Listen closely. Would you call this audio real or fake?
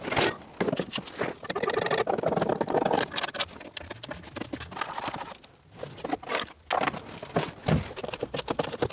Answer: real